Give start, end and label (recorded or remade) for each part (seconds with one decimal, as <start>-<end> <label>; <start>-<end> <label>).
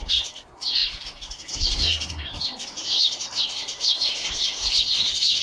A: 0.0-5.4 remade